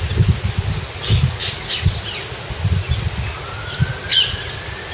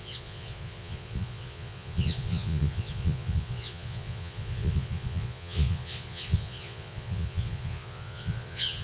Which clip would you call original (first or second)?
first